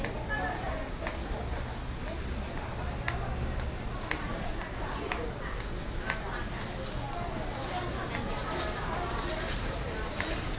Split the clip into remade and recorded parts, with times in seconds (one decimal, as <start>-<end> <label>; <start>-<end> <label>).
0.0-10.6 recorded